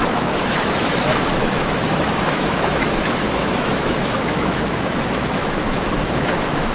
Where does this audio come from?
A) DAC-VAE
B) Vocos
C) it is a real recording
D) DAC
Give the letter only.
A